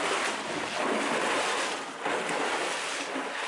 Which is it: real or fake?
real